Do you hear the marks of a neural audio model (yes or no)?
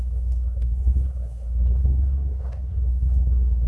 yes